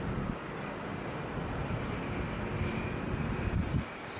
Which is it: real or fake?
real